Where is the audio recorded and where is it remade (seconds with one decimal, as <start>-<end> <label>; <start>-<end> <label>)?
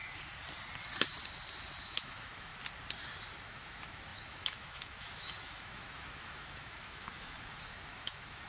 0.0-1.8 recorded; 1.8-2.5 remade; 2.5-3.4 recorded; 3.4-8.5 remade